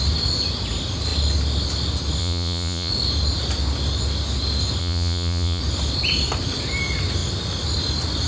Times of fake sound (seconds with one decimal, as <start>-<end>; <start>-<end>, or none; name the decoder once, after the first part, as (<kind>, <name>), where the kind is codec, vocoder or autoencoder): 2.2-2.9 (vocoder, Vocos); 4.8-5.6